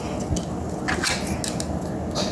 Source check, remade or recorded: recorded